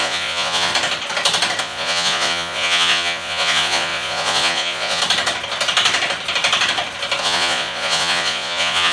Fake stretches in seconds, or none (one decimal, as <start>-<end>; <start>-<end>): 0.0-0.7; 1.6-5.0; 7.2-8.9